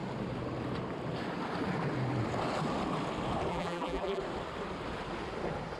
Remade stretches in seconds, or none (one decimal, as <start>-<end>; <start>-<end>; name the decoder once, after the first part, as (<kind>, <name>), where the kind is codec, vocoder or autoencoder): 3.5-4.2 (vocoder, BigVGAN v2)